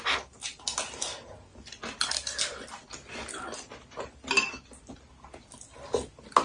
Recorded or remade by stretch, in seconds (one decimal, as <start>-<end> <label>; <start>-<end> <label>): 0.0-6.4 recorded